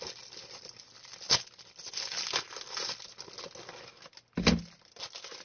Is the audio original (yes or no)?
yes